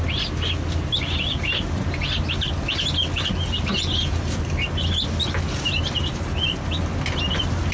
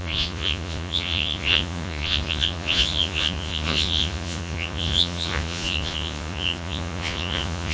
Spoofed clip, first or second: second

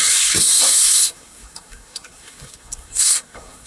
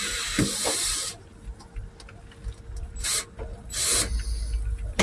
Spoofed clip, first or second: first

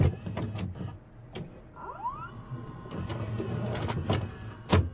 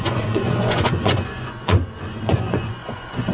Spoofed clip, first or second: second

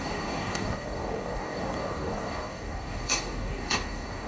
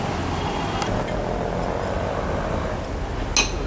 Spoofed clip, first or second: first